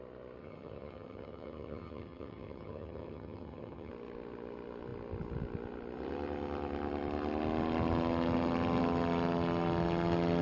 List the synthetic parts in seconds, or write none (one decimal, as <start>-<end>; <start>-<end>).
0.4-3.9